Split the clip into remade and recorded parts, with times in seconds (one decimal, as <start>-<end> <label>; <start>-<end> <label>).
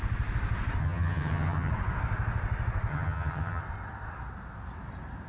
0.0-0.8 recorded; 0.8-1.7 remade; 1.7-2.9 recorded; 2.9-3.6 remade; 3.6-5.3 recorded